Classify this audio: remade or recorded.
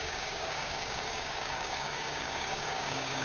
remade